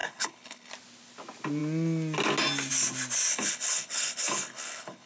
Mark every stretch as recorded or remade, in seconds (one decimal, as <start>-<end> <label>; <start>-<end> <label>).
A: 0.0-0.7 remade; 0.7-3.3 recorded; 3.3-5.1 remade